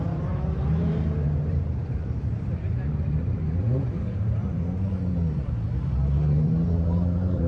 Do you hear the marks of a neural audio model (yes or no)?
yes